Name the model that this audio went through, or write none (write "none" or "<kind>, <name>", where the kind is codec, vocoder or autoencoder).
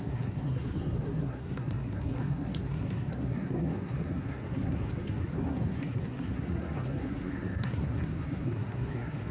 codec, SNAC